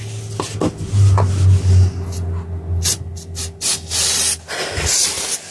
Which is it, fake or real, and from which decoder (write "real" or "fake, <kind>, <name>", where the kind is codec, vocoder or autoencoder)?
real